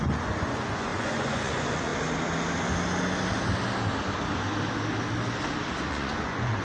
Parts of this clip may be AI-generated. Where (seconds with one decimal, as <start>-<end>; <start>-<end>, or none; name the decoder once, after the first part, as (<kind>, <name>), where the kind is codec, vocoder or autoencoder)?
0.0-1.9 (vocoder, Vocos); 5.9-6.6

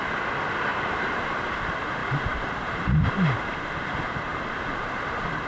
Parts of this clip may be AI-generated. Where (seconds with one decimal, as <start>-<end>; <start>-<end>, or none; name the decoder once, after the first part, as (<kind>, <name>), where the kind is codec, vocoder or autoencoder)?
0.7-1.3 (vocoder, BigVGAN v2); 2.0-5.5

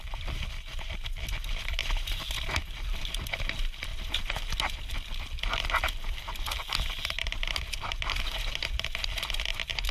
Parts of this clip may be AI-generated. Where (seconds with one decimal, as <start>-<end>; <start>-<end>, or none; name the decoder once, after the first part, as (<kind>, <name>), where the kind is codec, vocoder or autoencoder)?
none

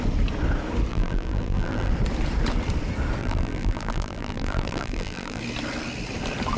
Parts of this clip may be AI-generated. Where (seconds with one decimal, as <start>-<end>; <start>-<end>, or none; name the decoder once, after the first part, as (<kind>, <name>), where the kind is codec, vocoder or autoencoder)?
0.9-1.9 (vocoder, BigVGAN v2); 3.2-5.4

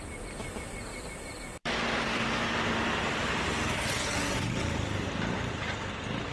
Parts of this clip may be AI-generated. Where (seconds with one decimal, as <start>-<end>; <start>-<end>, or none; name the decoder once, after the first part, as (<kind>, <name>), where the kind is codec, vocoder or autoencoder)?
0.9-4.0 (vocoder, BigVGAN v2)

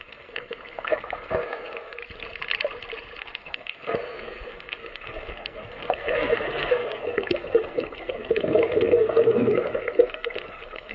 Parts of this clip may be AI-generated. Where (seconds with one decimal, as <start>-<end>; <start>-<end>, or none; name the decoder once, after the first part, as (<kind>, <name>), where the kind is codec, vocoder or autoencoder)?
0.0-2.0 (codec, SNAC); 3.2-10.9